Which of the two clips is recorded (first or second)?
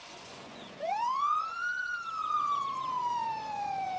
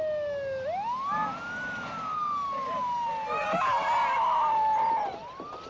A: second